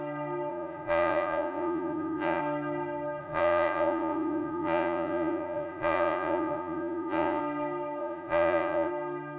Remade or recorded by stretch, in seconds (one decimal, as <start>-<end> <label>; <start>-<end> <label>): 0.0-0.5 recorded; 0.5-2.4 remade; 2.4-3.2 recorded; 3.2-7.4 remade; 7.4-8.0 recorded; 8.0-8.9 remade; 8.9-9.4 recorded